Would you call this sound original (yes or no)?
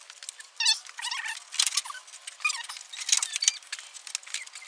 yes